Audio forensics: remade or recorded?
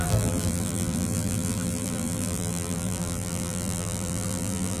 remade